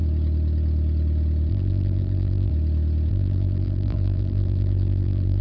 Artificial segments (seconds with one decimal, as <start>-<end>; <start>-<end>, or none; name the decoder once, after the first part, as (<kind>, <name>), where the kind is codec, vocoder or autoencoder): 1.5-2.5 (vocoder, BigVGAN v2); 3.1-5.4

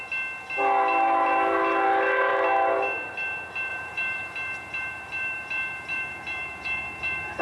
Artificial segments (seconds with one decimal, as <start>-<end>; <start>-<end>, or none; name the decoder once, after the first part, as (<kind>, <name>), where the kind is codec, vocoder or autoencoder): 3.7-7.4 (vocoder, BigVGAN v2)

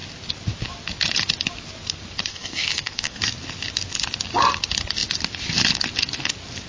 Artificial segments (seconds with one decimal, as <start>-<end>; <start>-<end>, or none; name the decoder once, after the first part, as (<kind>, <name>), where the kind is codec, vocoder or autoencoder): 2.3-3.2 (codec, SNAC)

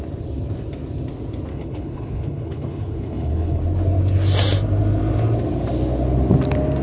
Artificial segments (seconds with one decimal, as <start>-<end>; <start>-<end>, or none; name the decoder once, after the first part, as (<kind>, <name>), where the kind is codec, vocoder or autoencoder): 1.5-3.6 (codec, HILCodec)

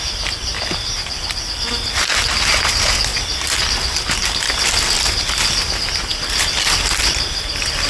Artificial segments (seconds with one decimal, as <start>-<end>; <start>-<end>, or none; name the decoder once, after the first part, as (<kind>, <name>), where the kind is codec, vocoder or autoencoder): none

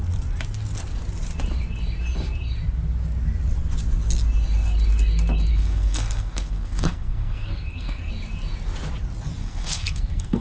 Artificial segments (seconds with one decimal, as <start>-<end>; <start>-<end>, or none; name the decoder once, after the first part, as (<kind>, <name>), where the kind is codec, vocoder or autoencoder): 5.5-8.1 (codec, SNAC); 9.4-10.4

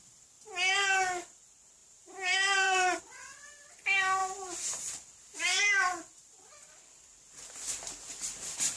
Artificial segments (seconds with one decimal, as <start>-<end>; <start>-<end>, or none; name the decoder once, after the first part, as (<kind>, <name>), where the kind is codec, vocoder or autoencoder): 1.8-3.0 (vocoder, BigVGAN v2); 4.2-5.6